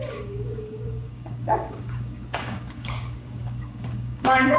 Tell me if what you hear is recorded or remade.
remade